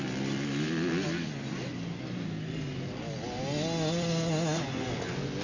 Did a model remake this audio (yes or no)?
no